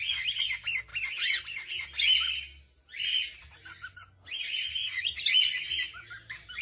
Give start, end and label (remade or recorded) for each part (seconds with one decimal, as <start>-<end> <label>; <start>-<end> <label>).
0.0-6.6 recorded